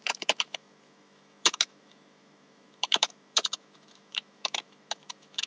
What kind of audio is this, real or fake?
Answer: fake